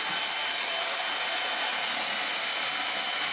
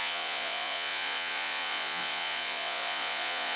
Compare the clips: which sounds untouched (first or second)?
first